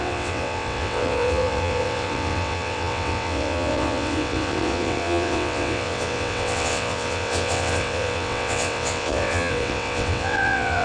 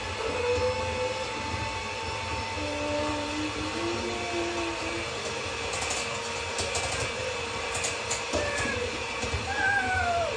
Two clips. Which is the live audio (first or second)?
second